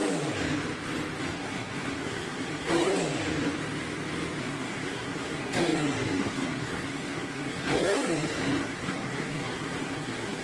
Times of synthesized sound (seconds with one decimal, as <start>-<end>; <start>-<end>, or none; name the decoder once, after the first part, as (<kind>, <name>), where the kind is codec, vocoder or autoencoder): 1.2-2.9 (codec, SNAC); 4.4-10.4